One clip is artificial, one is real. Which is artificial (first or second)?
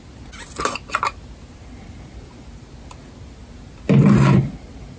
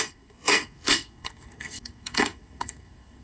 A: second